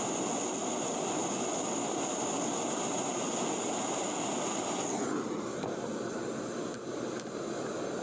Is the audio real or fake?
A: real